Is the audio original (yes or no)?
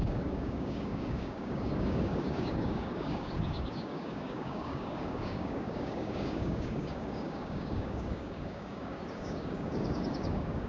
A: no